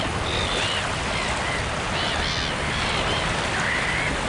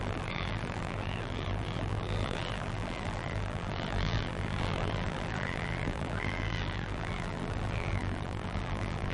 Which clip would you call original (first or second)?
first